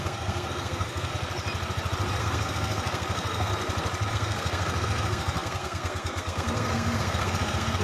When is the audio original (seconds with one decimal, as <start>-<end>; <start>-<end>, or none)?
1.1-2.2; 3.5-4.1